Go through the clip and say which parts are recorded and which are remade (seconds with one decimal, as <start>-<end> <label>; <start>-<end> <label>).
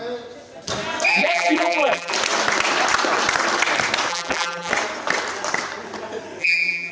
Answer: 0.0-1.1 recorded; 1.1-2.1 remade; 2.1-4.1 recorded; 4.1-4.7 remade; 4.7-6.4 recorded; 6.4-6.9 remade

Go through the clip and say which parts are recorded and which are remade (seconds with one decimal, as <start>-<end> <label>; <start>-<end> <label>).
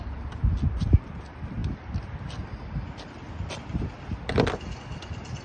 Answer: 0.0-5.4 recorded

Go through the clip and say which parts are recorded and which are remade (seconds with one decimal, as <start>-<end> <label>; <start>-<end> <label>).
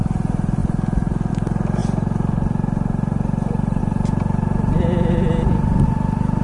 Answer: 0.0-6.4 recorded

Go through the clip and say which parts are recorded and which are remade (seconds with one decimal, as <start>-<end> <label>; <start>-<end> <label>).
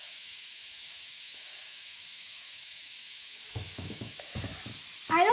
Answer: 0.0-4.5 remade; 4.5-5.3 recorded